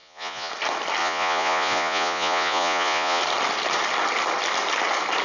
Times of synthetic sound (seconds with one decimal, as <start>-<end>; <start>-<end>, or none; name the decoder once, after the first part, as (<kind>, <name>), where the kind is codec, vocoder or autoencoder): 0.0-0.5 (vocoder, Vocos); 1.0-3.2